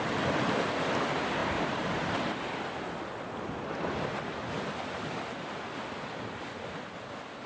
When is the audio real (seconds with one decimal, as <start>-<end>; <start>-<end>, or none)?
0.0-1.4; 2.3-7.5